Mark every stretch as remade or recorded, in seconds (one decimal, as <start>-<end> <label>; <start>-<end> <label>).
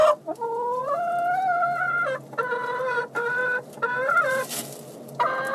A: 0.0-5.5 recorded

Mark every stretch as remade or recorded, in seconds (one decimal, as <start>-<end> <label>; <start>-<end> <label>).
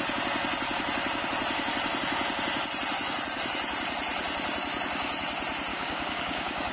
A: 0.0-5.7 recorded; 5.7-6.7 remade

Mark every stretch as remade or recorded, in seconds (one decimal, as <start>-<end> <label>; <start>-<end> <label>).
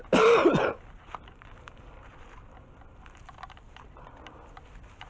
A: 0.0-2.1 remade; 2.1-5.1 recorded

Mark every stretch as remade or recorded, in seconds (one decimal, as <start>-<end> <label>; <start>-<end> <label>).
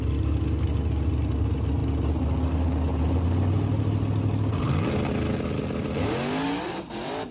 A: 0.0-7.3 recorded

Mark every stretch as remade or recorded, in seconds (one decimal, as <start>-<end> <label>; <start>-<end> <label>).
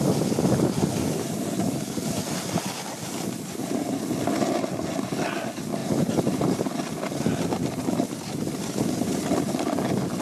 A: 0.0-5.8 recorded; 5.8-6.6 remade; 6.6-10.2 recorded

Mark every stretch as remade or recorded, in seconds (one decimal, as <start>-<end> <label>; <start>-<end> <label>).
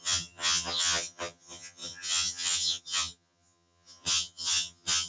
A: 0.0-5.1 remade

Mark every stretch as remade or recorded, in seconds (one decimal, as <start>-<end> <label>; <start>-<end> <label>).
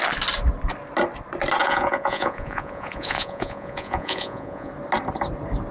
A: 0.0-1.6 recorded; 1.6-4.7 remade; 4.7-5.7 recorded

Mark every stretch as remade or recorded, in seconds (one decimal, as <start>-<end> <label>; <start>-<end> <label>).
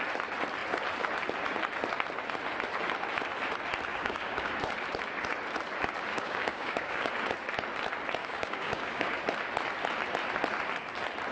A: 0.0-3.9 recorded; 3.9-4.5 remade; 4.5-6.1 recorded; 6.1-7.1 remade; 7.1-8.2 recorded; 8.2-9.2 remade; 9.2-11.3 recorded